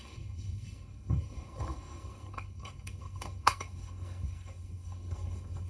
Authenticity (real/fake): fake